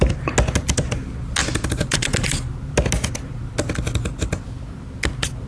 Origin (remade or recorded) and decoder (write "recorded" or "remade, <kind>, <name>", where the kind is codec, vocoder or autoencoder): recorded